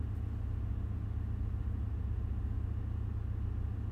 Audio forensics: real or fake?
real